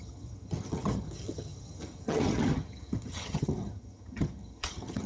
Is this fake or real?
fake